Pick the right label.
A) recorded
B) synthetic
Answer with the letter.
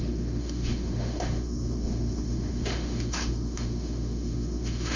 B